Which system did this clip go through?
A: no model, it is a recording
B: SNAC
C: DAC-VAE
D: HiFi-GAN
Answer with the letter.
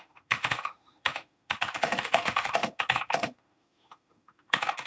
C